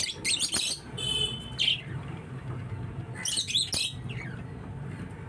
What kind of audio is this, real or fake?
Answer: real